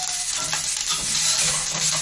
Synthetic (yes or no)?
no